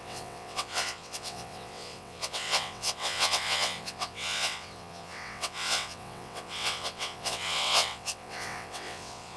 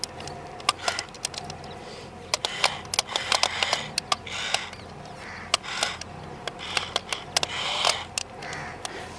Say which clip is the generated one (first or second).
first